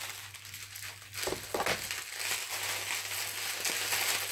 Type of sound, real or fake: real